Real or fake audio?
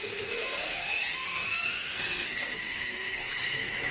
fake